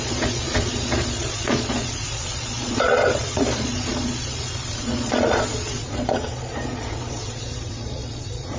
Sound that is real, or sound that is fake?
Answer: fake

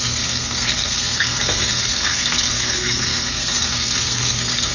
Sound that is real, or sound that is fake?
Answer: fake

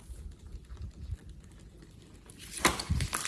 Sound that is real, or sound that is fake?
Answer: real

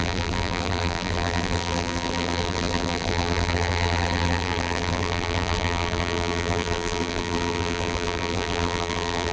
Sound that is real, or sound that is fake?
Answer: fake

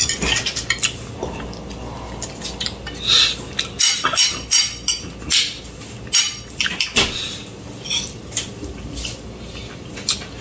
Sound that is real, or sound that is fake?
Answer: real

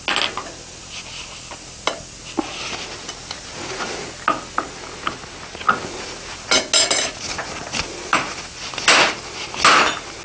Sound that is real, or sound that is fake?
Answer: real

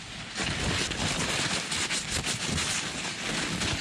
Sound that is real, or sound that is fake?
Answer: real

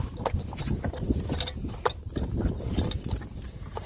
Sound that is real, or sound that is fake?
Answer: real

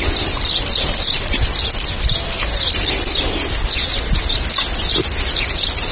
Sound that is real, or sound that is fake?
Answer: real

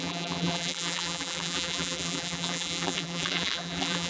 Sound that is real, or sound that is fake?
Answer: fake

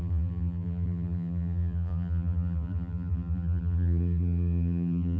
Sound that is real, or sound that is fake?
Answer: fake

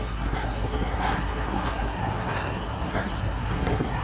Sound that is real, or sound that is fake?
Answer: fake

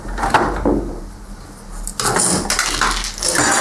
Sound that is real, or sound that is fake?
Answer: real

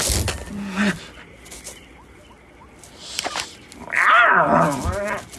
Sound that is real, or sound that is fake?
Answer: real